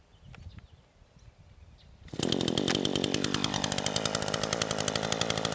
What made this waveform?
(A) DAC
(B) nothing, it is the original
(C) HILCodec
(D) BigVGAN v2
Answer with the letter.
B